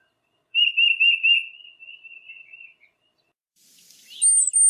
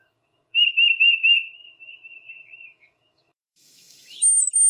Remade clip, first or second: second